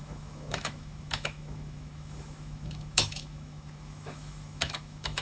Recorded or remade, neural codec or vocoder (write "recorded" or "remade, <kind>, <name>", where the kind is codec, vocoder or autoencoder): remade, autoencoder, DAC-VAE